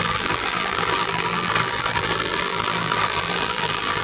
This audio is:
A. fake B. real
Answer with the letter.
A